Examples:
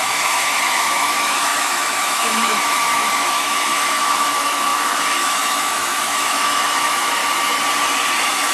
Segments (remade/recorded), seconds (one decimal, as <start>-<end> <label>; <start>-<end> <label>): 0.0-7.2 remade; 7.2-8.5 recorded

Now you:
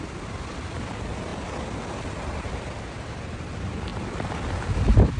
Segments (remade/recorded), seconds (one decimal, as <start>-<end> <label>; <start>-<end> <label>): 0.0-5.2 recorded

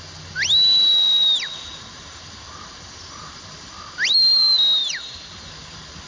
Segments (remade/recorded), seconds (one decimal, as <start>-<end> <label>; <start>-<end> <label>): 0.0-4.8 recorded; 4.8-5.3 remade; 5.3-6.1 recorded

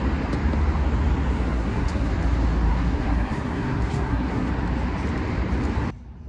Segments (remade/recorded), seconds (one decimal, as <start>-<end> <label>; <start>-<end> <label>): 0.0-1.3 recorded; 1.3-2.1 remade; 2.1-2.7 recorded; 2.7-4.5 remade; 4.5-6.3 recorded

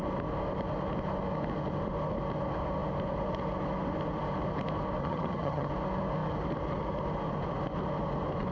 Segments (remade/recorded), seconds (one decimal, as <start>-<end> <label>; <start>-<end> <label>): 0.0-5.0 recorded; 5.0-5.7 remade; 5.7-8.5 recorded

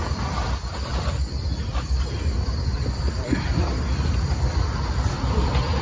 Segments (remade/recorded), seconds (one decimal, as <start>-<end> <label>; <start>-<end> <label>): 0.0-5.8 recorded